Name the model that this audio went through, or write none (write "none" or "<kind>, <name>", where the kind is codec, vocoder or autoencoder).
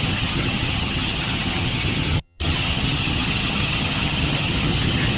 vocoder, HiFi-GAN